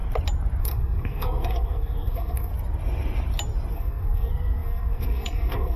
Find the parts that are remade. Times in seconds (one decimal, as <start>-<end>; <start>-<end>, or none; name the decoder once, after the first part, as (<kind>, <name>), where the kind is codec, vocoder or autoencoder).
0.6-2.5 (codec, SNAC); 3.7-5.8